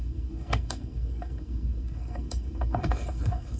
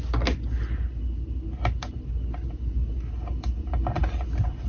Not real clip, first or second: first